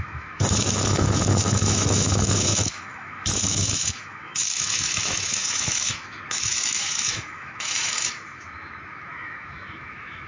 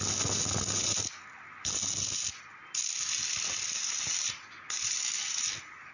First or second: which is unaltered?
second